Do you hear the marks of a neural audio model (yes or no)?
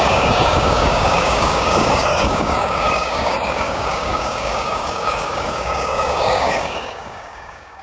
yes